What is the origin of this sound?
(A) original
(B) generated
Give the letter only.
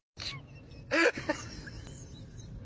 A